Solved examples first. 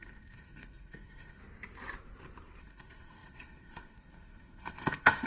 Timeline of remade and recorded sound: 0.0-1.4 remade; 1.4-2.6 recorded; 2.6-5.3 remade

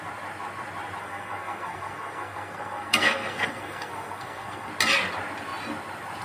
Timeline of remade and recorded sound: 0.0-1.0 recorded; 1.0-4.7 remade; 4.7-6.2 recorded

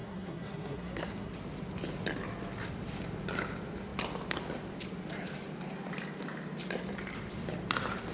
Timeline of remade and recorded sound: 0.0-1.3 remade; 1.3-8.1 recorded

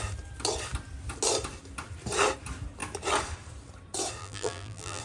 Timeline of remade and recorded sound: 0.0-4.2 recorded; 4.2-5.0 remade

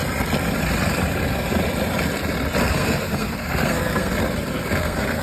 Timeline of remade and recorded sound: 0.0-2.7 recorded; 2.7-4.1 remade; 4.1-4.8 recorded; 4.8-5.2 remade

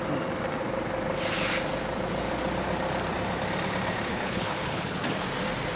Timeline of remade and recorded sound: 0.0-4.1 recorded; 4.1-5.0 remade; 5.0-5.8 recorded